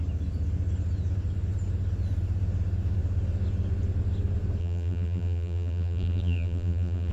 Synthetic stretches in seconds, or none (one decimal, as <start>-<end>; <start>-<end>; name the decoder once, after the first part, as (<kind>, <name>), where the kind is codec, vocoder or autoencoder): 4.6-7.1 (vocoder, BigVGAN v2)